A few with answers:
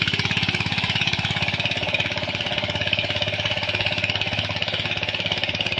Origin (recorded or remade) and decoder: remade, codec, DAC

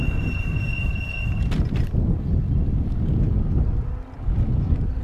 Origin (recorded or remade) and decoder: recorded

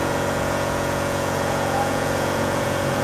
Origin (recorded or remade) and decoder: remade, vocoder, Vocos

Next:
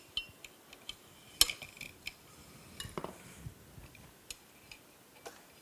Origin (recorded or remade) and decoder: recorded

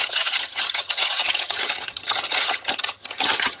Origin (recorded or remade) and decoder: remade, vocoder, HiFi-GAN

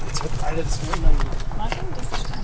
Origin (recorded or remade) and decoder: recorded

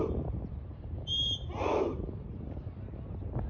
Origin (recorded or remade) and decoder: remade, vocoder, BigVGAN v2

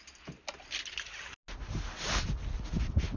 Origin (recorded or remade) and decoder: recorded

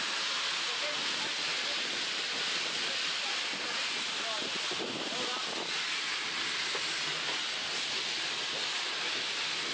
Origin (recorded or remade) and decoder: recorded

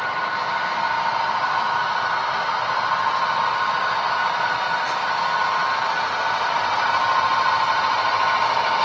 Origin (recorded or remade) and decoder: remade, vocoder, BigVGAN v2